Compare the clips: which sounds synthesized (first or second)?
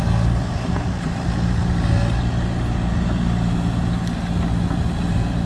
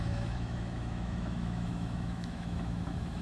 second